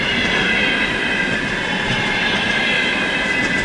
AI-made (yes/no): no